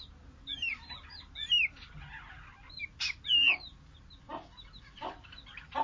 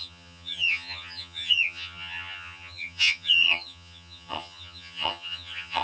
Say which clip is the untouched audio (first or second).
first